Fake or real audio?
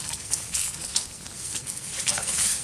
fake